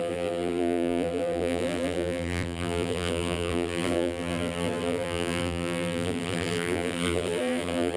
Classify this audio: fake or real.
fake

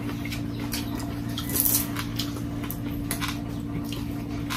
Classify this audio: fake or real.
real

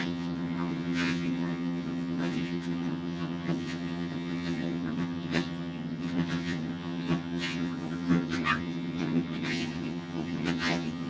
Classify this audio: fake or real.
fake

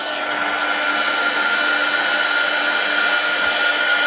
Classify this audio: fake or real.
real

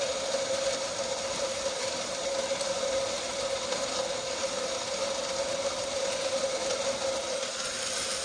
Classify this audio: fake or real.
real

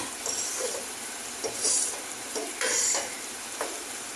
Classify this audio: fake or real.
fake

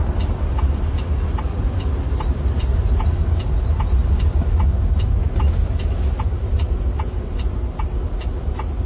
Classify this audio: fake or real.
real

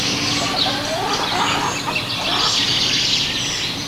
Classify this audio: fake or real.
real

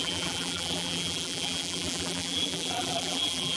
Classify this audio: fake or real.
fake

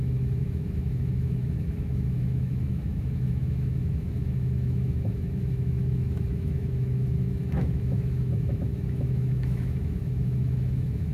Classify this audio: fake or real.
fake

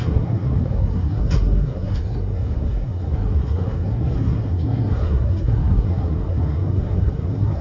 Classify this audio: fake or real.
fake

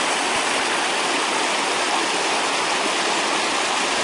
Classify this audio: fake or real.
real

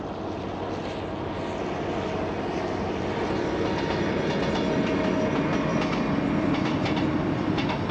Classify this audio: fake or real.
real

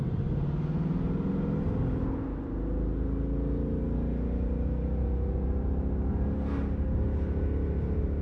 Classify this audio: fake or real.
real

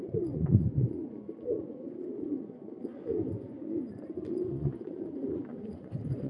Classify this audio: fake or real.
fake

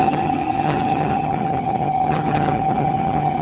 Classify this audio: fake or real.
fake